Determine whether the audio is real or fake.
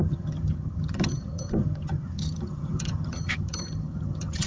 fake